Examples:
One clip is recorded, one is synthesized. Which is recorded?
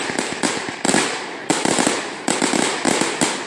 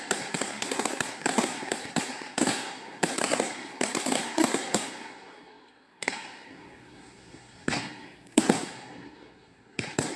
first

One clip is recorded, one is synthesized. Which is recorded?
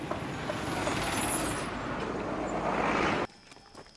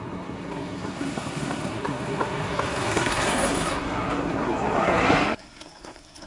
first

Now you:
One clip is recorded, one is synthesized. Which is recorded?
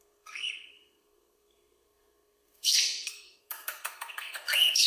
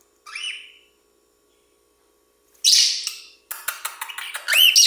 second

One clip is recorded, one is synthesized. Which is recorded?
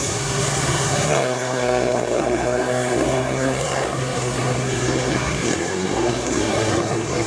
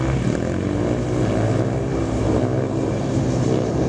second